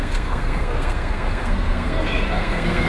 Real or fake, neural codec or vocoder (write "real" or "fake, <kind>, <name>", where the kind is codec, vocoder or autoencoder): fake, codec, SNAC